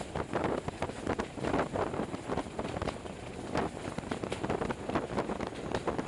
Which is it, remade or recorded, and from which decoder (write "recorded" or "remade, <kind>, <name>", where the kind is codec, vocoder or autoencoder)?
recorded